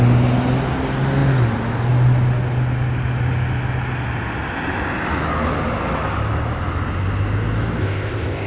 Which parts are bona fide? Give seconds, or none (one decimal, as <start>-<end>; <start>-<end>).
0.0-7.8